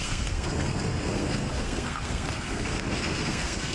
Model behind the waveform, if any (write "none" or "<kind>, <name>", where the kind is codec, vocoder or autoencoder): codec, SNAC